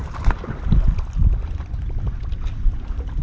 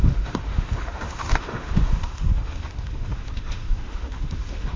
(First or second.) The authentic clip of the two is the first